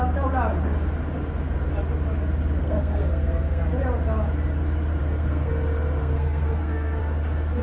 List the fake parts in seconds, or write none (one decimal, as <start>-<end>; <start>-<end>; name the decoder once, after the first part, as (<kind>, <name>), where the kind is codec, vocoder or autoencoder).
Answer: 2.6-3.6 (codec, SNAC); 5.0-5.5; 6.0-7.0